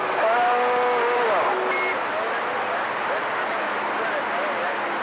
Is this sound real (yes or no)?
yes